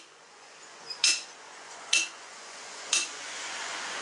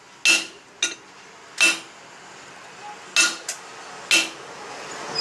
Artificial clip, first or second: first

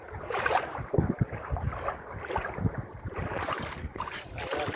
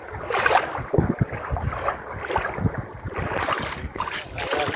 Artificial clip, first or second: first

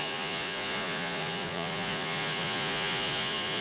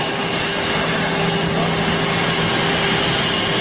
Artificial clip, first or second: first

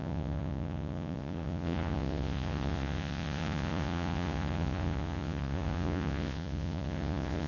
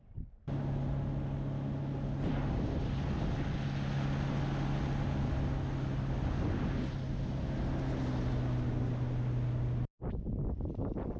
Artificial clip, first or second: first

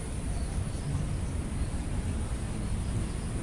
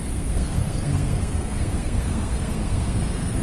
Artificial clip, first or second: second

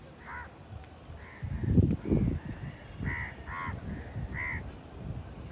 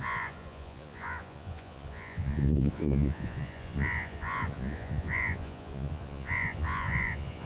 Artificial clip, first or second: second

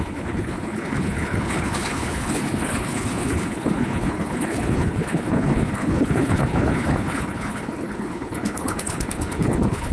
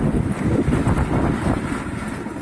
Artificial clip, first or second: first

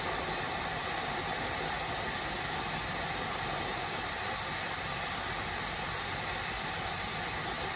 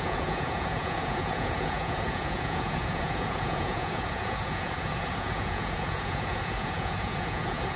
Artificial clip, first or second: second